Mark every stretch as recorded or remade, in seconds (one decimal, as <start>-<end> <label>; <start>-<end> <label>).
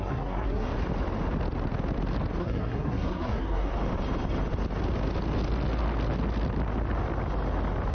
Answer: 0.0-0.7 remade; 0.7-2.4 recorded; 2.4-3.7 remade; 3.7-7.9 recorded